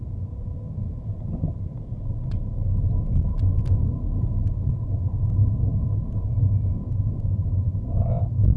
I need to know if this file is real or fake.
real